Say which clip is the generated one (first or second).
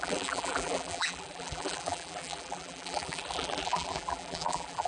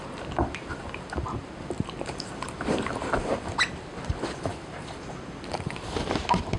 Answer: first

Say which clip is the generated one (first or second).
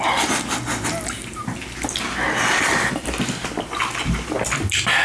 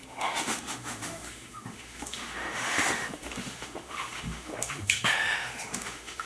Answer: second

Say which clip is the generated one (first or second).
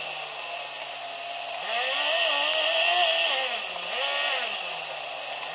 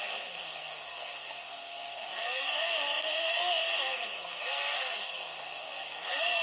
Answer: second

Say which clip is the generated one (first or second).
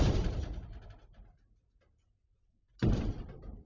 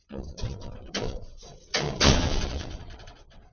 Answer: second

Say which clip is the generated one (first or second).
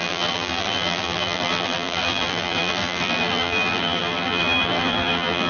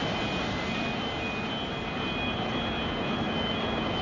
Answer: first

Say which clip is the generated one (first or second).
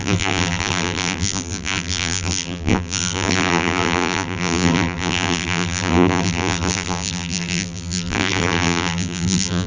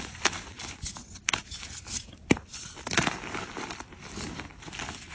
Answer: first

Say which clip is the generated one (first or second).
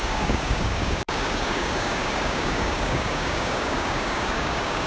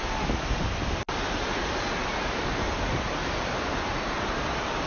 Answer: first